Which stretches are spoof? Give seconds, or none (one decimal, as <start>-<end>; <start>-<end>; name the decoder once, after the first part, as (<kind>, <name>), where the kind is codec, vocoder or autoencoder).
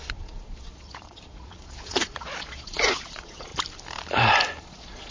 0.0-3.5 (vocoder, Vocos); 4.6-5.1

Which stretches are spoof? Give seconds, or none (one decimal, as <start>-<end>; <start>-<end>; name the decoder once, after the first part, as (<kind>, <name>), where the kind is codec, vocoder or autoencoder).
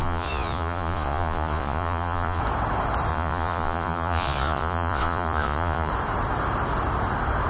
0.0-2.4 (vocoder, Vocos); 3.1-5.9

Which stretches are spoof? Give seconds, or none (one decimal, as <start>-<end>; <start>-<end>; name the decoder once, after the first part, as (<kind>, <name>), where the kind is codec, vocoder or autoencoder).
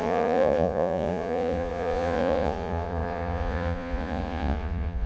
0.0-5.1 (vocoder, Vocos)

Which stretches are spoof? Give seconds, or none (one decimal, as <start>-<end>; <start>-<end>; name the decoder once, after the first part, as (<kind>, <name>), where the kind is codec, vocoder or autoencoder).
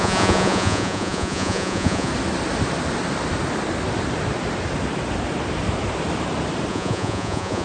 0.0-2.1 (vocoder, Vocos); 6.7-7.6